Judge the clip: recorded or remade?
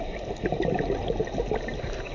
recorded